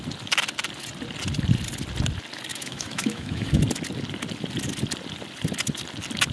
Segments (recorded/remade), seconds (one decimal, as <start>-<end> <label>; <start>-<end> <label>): 0.0-2.5 recorded; 2.5-3.6 remade; 3.6-6.3 recorded